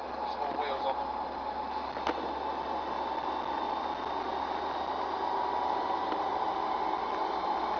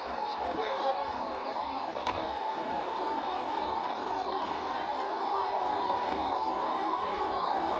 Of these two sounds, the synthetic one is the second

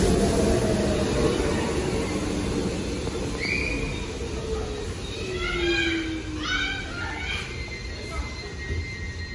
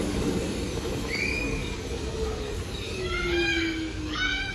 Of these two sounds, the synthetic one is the second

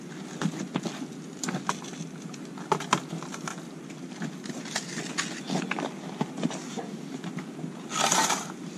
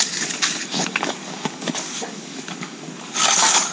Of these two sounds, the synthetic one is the second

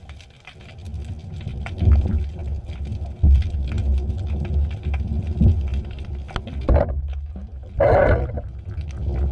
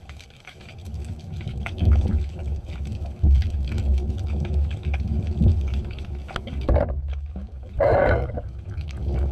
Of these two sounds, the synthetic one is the second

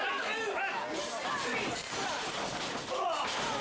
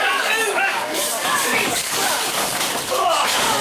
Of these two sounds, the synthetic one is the second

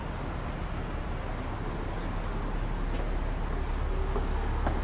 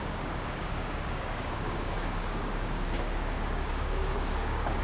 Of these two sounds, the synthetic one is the second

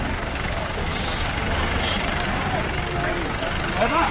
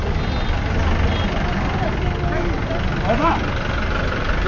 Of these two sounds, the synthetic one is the first